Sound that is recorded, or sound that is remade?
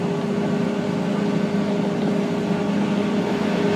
recorded